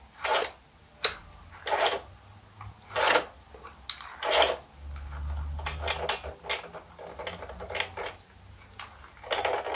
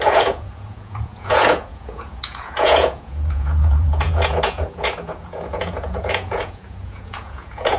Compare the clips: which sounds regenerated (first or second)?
second